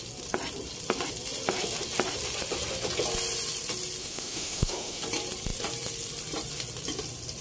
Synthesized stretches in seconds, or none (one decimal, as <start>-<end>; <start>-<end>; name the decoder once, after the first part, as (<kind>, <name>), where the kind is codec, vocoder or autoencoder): 4.0-5.0 (autoencoder, DAC-VAE)